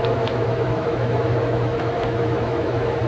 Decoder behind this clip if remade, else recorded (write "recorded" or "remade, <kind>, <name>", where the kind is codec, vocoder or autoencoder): remade, autoencoder, DAC-VAE